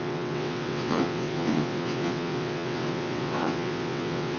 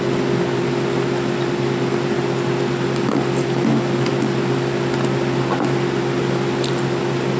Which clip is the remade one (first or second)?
first